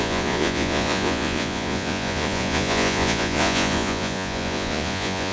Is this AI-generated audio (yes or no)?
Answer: yes